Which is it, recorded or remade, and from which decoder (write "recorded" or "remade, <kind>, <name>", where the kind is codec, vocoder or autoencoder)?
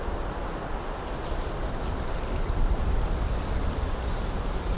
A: recorded